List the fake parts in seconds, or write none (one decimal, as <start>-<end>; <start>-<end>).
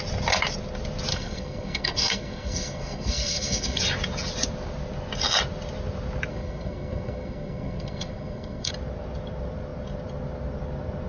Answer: 1.1-3.8; 6.3-8.7